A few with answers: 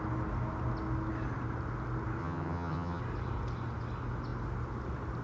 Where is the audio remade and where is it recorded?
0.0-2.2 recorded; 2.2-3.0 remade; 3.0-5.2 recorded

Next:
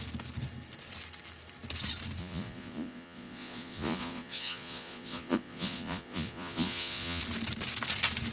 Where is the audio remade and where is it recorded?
0.0-2.2 recorded; 2.2-7.2 remade; 7.2-8.3 recorded